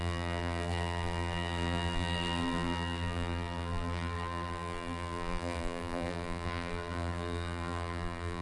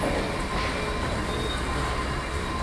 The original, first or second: second